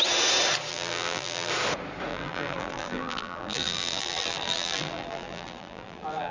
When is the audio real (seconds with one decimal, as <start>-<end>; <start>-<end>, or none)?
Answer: 0.0-0.7; 1.5-2.1